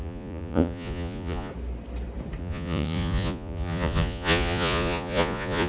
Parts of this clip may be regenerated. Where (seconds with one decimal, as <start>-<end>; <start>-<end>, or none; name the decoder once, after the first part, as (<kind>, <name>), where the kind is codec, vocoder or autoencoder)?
0.0-1.5 (vocoder, Vocos); 2.4-5.7